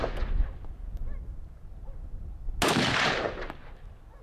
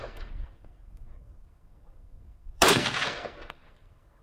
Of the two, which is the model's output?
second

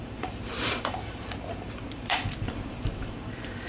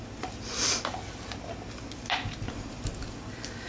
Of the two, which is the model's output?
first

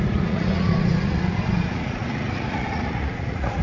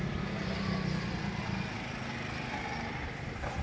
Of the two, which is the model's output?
first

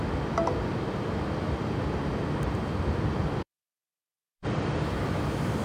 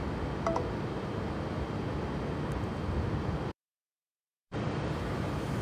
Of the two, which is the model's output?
first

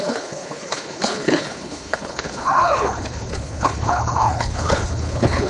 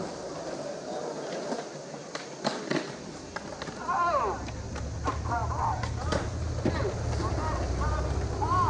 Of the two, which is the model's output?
first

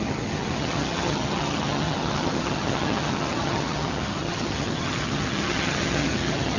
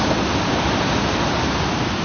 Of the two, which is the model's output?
first